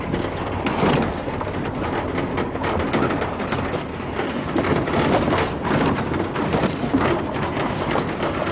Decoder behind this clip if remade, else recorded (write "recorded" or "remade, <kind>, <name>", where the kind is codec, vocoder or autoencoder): recorded